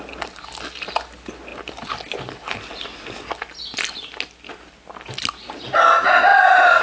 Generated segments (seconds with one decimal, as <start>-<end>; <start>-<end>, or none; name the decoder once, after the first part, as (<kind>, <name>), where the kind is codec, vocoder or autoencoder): none